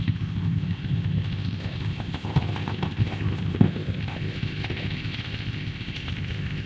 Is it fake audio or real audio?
fake